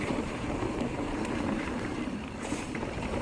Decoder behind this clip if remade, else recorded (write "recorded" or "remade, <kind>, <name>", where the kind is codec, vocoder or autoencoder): remade, vocoder, BigVGAN v2